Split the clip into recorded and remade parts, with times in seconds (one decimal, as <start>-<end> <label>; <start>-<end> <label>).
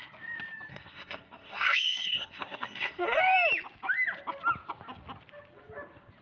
0.0-0.7 recorded; 0.7-3.2 remade; 3.2-6.2 recorded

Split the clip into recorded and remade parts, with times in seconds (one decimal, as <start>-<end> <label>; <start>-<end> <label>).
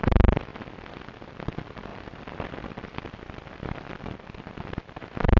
0.0-0.5 remade; 0.5-1.2 recorded; 1.2-5.4 remade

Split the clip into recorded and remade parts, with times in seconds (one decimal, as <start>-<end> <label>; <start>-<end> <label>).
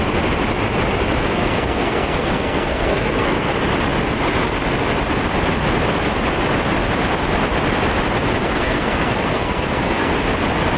0.0-1.2 recorded; 1.2-3.5 remade; 3.5-8.4 recorded; 8.4-10.1 remade; 10.1-10.8 recorded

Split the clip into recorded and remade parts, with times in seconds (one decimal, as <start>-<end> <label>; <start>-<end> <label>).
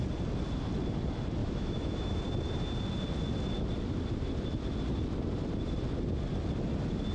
0.0-1.4 recorded; 1.4-2.2 remade; 2.2-7.1 recorded